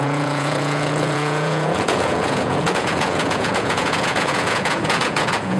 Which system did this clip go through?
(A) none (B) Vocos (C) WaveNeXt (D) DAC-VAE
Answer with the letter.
B